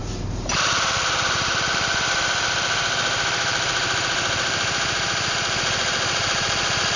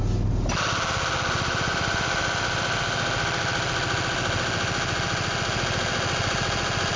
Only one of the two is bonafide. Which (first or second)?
second